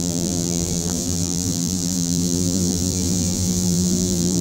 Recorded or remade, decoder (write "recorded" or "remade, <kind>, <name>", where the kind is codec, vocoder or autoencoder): remade, vocoder, BigVGAN v2